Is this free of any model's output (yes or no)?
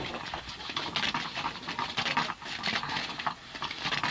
yes